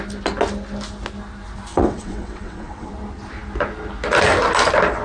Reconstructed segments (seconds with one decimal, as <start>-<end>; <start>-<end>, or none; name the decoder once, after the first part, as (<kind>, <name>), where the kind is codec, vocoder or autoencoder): 1.7-2.9 (vocoder, WaveNeXt)